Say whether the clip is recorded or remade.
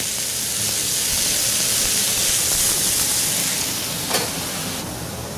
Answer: recorded